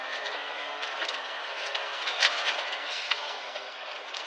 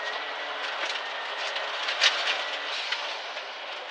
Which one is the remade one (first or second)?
first